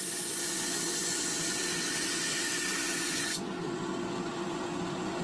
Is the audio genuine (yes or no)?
no